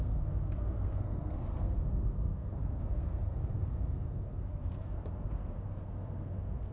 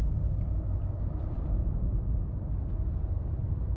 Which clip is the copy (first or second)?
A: first